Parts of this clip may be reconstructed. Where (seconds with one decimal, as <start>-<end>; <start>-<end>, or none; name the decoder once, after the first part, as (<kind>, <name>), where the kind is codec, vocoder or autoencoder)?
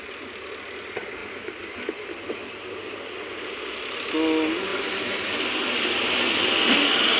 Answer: 4.7-5.4 (autoencoder, DAC-VAE)